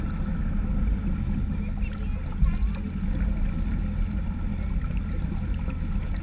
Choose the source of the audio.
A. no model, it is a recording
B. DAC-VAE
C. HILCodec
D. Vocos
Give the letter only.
A